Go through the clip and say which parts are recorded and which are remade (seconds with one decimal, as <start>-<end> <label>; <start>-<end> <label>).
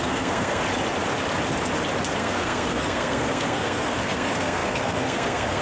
0.0-0.6 remade; 0.6-2.2 recorded; 2.2-5.6 remade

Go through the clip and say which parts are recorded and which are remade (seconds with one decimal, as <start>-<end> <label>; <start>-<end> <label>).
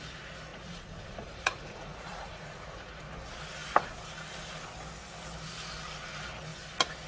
0.0-0.5 recorded; 0.5-3.0 remade; 3.0-7.1 recorded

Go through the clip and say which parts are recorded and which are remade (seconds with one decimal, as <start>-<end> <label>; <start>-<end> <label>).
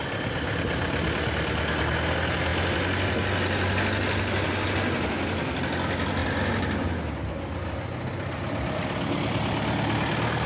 0.0-10.5 recorded